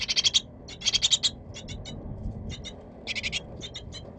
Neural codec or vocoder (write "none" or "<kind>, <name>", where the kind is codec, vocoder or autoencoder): none